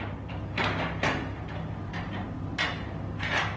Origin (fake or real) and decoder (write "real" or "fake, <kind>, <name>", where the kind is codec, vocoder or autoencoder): real